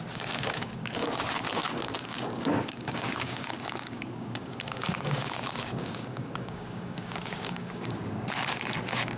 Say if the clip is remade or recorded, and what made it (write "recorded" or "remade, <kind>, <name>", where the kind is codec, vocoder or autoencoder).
remade, codec, DAC